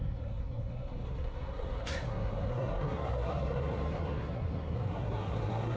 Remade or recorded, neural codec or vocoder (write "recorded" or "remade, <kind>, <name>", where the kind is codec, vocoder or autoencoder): remade, codec, SNAC